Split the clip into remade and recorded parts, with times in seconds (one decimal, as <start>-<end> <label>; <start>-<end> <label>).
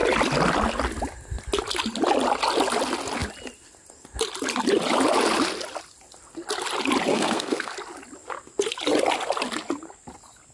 0.0-7.1 recorded; 7.1-7.7 remade; 7.7-10.5 recorded